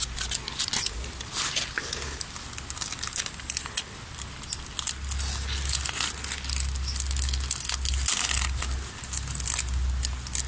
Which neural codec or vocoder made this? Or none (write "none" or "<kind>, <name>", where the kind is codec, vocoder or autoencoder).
none